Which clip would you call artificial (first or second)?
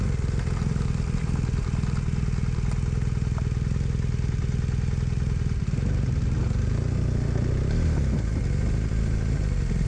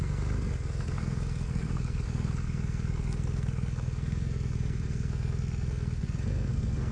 second